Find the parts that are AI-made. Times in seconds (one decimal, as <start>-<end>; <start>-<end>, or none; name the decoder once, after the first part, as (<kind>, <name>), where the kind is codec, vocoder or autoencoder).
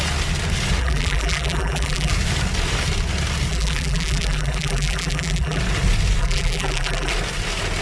0.8-2.1 (vocoder, BigVGAN v2); 3.5-5.6; 6.2-7.1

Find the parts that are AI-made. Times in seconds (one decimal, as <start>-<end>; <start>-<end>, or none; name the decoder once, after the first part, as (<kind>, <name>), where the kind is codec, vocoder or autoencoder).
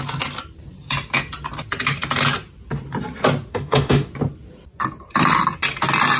3.5-4.1 (autoencoder, DAC-VAE)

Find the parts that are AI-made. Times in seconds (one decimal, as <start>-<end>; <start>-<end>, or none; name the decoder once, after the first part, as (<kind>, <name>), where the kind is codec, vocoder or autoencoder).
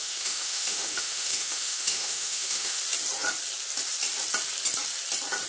0.0-2.8 (autoencoder, DAC-VAE)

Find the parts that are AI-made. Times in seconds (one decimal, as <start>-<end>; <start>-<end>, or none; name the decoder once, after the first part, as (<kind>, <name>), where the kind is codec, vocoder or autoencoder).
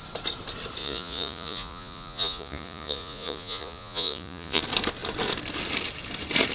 0.8-4.6 (vocoder, Vocos)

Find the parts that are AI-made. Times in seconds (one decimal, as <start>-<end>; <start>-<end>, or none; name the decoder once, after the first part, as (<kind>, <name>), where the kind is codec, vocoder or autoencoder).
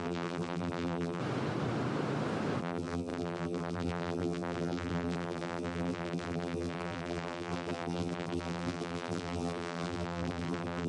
0.0-1.2 (vocoder, BigVGAN v2); 2.6-10.9